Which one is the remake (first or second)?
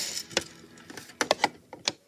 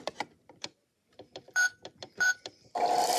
second